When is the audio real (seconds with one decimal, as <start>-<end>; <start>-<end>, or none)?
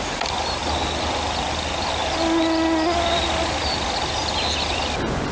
0.0-5.3